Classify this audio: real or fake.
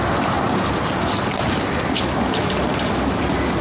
real